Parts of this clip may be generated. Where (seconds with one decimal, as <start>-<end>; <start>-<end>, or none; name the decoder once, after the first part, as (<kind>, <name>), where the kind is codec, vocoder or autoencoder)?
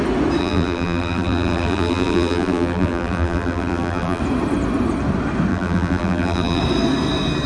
0.4-4.2 (vocoder, BigVGAN v2); 5.5-6.6